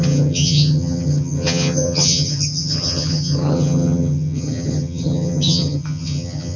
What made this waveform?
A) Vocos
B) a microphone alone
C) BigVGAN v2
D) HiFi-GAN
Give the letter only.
D